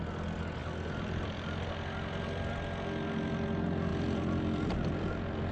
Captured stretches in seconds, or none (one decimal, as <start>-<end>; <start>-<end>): 0.0-0.6; 1.7-3.9